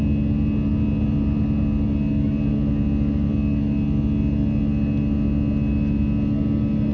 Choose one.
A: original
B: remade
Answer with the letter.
A